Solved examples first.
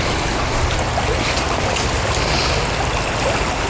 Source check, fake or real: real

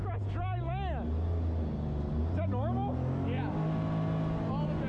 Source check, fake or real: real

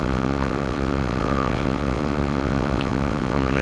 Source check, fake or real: fake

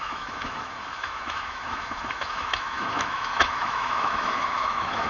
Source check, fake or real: fake